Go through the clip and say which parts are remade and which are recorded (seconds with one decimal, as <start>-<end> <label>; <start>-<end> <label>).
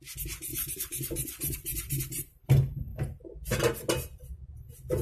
0.0-0.5 recorded; 0.5-2.5 remade; 2.5-5.0 recorded